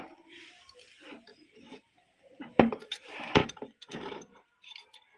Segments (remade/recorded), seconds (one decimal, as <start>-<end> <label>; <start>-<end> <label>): 0.0-1.3 recorded; 1.3-2.7 remade; 2.7-3.4 recorded; 3.4-5.2 remade